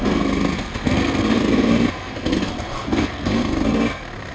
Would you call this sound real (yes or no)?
no